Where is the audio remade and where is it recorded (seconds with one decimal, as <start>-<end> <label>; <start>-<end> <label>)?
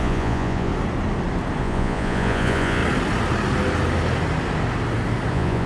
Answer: 0.0-0.7 remade; 0.7-1.6 recorded; 1.6-2.8 remade; 2.8-5.3 recorded; 5.3-5.7 remade